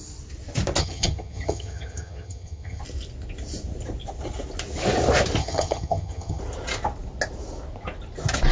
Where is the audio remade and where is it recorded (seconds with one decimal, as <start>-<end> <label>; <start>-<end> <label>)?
0.0-0.8 recorded; 0.8-2.8 remade; 2.8-5.4 recorded; 5.4-6.4 remade; 6.4-8.5 recorded